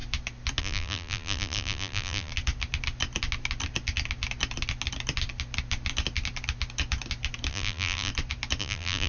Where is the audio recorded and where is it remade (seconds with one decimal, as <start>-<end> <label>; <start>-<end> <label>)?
0.0-0.6 recorded; 0.6-2.3 remade; 2.3-7.5 recorded; 7.5-8.1 remade; 8.1-8.6 recorded; 8.6-9.1 remade